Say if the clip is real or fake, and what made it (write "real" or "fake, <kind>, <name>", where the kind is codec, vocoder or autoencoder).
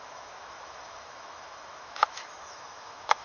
fake, autoencoder, DAC-VAE